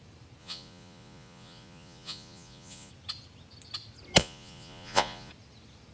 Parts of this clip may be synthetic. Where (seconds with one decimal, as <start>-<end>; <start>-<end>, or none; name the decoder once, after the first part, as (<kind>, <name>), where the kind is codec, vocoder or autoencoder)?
0.4-2.9 (vocoder, Vocos); 4.2-5.3